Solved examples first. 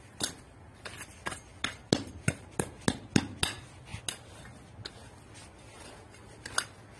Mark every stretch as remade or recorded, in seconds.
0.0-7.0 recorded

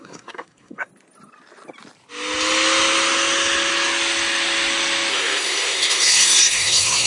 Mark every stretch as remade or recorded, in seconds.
0.0-0.9 remade; 0.9-5.1 recorded; 5.1-7.1 remade

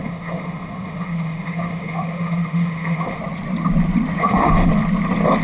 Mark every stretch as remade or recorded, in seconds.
0.0-3.2 remade; 3.2-4.2 recorded; 4.2-4.7 remade; 4.7-5.4 recorded